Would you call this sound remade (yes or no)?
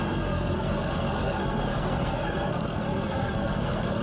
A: yes